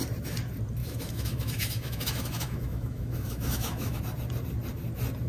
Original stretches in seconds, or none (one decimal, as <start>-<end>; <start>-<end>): 0.0-0.8; 4.0-5.3